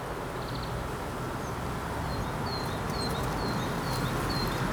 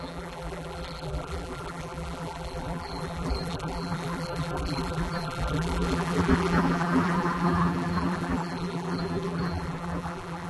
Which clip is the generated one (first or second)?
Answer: second